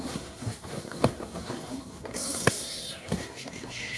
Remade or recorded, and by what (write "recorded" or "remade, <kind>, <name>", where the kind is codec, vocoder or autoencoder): remade, codec, SNAC